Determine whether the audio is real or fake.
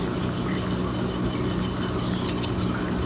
real